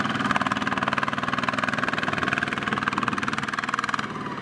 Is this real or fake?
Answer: real